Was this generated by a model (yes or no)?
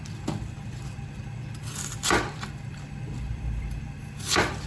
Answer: yes